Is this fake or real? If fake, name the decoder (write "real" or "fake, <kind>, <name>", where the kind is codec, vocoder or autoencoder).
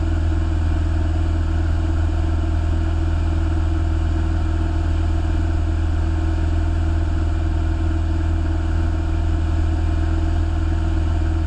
real